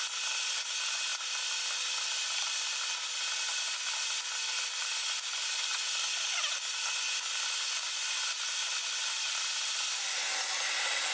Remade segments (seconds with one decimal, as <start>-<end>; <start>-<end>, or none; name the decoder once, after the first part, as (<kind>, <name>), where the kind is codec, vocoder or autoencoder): none